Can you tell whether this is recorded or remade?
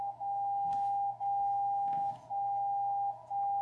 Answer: recorded